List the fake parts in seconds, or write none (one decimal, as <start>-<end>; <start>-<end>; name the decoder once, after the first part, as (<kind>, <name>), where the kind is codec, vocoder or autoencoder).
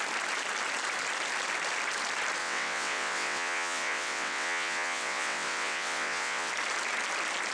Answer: 2.4-6.5 (vocoder, WaveNeXt)